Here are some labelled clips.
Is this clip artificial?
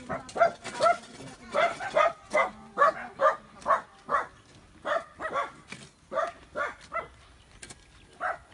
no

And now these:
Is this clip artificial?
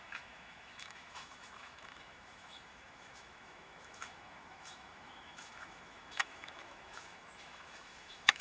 yes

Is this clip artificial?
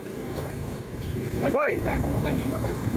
yes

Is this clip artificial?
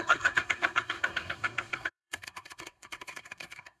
yes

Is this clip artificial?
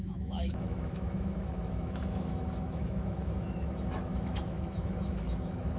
yes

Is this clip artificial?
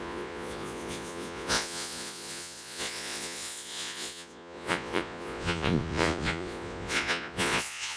yes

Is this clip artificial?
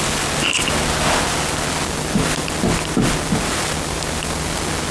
no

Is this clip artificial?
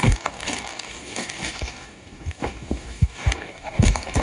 yes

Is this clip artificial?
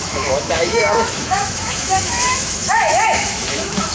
yes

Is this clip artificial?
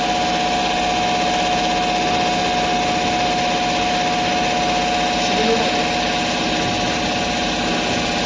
no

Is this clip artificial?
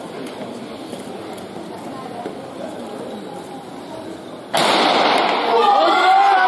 no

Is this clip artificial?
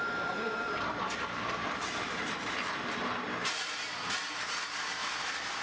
yes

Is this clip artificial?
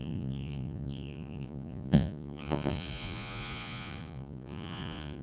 yes